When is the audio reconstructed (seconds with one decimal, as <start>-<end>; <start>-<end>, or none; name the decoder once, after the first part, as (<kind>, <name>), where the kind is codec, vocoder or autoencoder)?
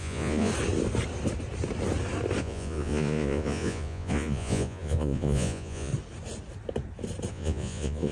0.0-0.5 (vocoder, Vocos); 2.4-5.9; 7.3-8.1